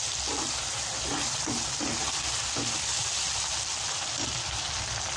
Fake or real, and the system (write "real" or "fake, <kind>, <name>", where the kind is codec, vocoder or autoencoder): real